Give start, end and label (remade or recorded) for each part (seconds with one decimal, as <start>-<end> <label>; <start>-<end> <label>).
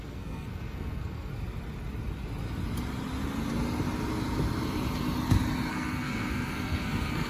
0.0-1.3 remade; 1.3-5.7 recorded; 5.7-7.3 remade